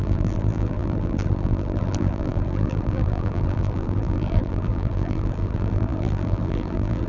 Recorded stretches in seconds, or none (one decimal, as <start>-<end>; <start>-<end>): none